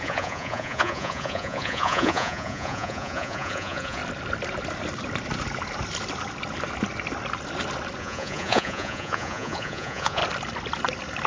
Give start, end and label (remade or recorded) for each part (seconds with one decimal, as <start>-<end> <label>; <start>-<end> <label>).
0.0-4.0 remade; 4.0-8.0 recorded; 8.0-10.2 remade; 10.2-11.3 recorded